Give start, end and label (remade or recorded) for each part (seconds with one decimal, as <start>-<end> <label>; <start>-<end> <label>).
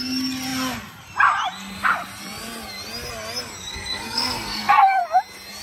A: 0.0-3.7 recorded; 3.7-5.0 remade; 5.0-5.6 recorded